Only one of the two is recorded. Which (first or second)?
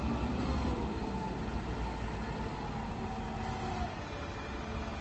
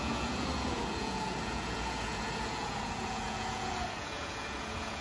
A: first